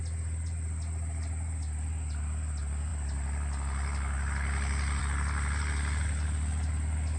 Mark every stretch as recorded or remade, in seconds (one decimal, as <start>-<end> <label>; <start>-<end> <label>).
0.0-7.2 recorded